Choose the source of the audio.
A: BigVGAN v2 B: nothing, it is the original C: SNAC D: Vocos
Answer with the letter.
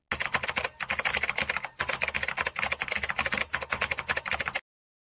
B